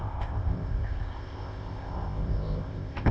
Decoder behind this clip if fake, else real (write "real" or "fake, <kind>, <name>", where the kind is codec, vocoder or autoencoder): fake, codec, ZipCodec